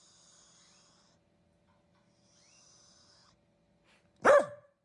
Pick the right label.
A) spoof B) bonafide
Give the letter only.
B